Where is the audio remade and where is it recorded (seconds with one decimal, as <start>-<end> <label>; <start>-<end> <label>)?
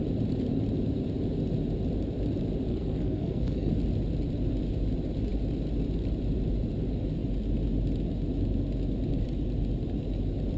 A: 0.0-2.7 recorded; 2.7-3.7 remade; 3.7-10.6 recorded